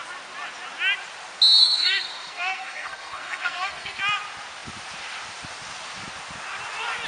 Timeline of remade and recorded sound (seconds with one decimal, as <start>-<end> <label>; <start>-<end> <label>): 0.0-1.6 recorded; 1.6-4.0 remade; 4.0-7.1 recorded